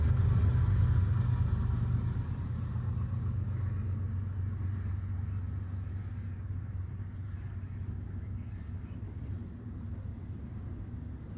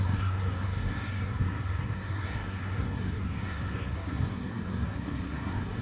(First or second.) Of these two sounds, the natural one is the first